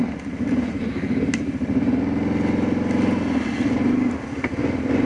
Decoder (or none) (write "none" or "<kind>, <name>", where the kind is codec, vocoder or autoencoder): none